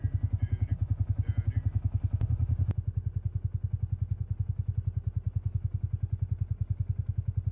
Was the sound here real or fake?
real